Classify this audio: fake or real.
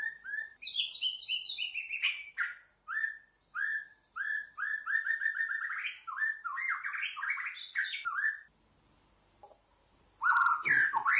real